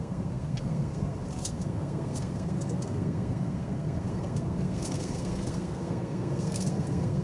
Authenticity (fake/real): fake